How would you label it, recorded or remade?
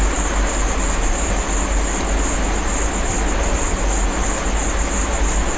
recorded